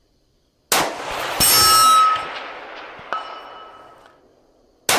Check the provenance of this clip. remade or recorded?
recorded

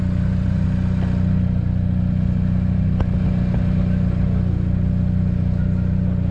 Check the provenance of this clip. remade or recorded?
recorded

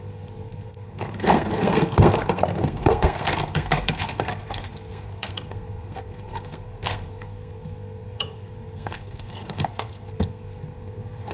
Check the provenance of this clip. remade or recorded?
remade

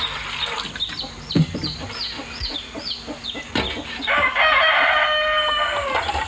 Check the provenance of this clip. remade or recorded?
recorded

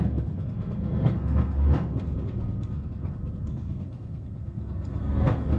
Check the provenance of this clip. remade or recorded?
remade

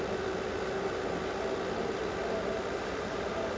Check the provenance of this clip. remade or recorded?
recorded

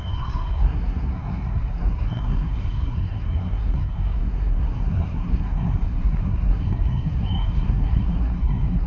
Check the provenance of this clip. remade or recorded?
remade